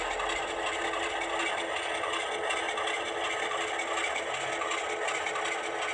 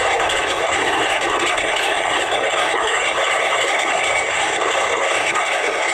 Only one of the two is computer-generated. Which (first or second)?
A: second